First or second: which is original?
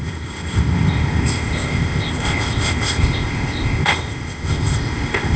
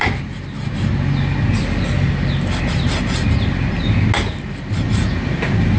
second